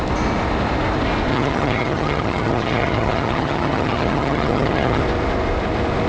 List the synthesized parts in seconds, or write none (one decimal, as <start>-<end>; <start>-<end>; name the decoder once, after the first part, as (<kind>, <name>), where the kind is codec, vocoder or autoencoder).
1.3-5.0 (vocoder, HiFi-GAN)